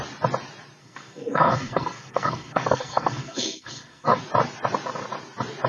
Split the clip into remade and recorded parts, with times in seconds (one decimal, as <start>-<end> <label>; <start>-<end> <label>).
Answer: 0.0-0.8 recorded; 0.8-4.2 remade; 4.2-5.7 recorded

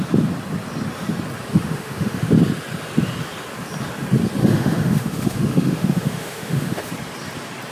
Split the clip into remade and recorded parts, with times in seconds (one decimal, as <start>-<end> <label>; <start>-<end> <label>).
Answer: 0.0-1.5 recorded; 1.5-2.3 remade; 2.3-4.4 recorded; 4.4-6.9 remade; 6.9-7.7 recorded

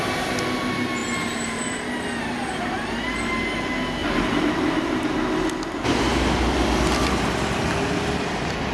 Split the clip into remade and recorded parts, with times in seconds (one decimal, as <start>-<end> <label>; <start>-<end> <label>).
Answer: 0.0-1.0 recorded; 1.0-1.6 remade; 1.6-2.4 recorded; 2.4-3.3 remade; 3.3-4.0 recorded; 4.0-5.0 remade; 5.0-8.7 recorded

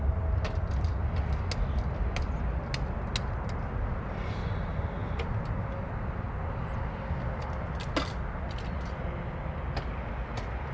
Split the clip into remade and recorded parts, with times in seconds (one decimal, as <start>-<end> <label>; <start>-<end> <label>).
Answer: 0.0-10.7 recorded